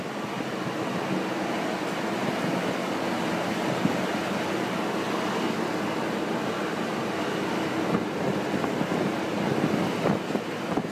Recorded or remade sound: recorded